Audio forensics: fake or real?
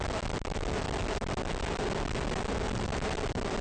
real